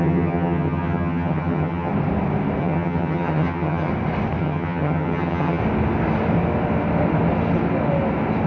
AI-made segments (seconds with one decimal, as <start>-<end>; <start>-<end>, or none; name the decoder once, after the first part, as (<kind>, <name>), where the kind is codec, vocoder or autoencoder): 0.0-1.9 (vocoder, HiFi-GAN); 2.6-3.9; 4.4-5.6